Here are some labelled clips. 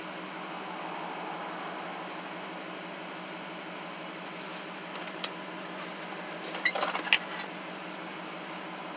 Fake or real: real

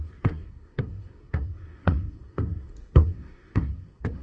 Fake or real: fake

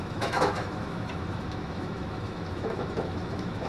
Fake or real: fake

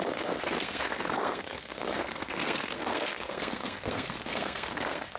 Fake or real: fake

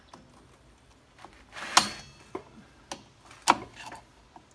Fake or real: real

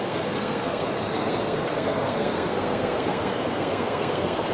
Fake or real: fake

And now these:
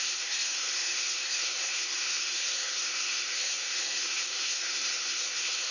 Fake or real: fake